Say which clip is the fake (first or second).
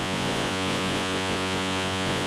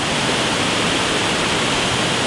first